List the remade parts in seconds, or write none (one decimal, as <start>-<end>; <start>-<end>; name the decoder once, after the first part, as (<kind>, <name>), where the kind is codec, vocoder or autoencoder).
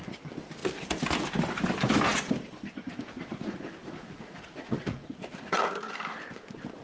3.3-5.6 (vocoder, Vocos)